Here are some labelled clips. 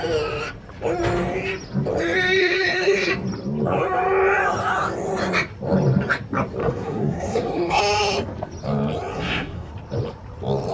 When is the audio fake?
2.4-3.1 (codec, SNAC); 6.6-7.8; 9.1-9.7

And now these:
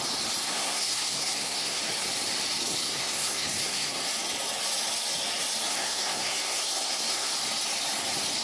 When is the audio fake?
0.4-1.8 (codec, SNAC); 2.8-4.0; 5.7-7.3

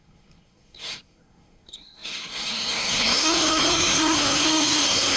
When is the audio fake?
0.0-5.2 (codec, SNAC)

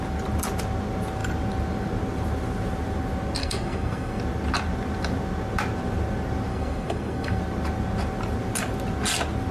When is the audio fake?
3.4-4.2 (codec, SNAC); 6.5-7.4

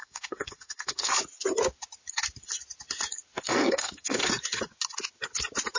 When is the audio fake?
0.0-1.1 (codec, SNAC); 3.4-4.2